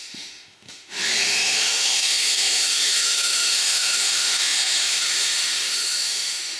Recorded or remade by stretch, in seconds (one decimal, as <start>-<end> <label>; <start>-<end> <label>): 0.0-6.6 remade